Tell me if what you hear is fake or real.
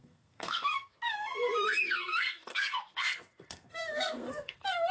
fake